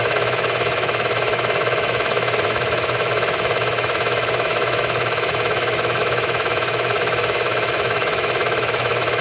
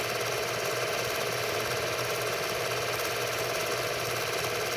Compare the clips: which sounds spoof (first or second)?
first